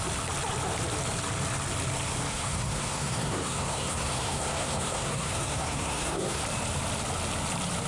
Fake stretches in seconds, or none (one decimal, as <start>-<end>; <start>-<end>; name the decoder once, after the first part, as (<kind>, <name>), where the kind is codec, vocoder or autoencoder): 2.3-6.4 (codec, SNAC)

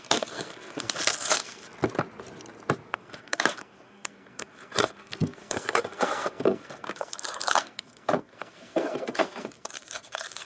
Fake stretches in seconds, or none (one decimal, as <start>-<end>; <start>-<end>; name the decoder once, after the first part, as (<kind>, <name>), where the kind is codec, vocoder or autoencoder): 0.0-1.7 (codec, SNAC); 2.9-10.4

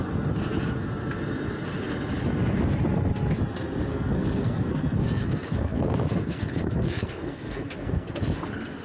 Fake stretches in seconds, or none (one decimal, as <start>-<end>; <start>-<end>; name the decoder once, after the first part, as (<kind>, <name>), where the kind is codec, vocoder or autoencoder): 3.9-8.2 (codec, SNAC)

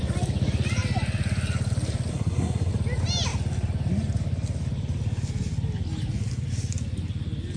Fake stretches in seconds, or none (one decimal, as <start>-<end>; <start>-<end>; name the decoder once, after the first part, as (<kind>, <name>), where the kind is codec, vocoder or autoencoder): 2.1-2.7 (codec, SNAC)

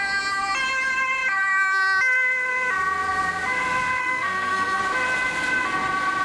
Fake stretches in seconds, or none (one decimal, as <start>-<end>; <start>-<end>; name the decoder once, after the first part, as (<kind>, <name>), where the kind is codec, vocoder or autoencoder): 4.0-4.8 (codec, SNAC)

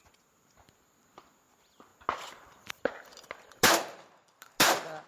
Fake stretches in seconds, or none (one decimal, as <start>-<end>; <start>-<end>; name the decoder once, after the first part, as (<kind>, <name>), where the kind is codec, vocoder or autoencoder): none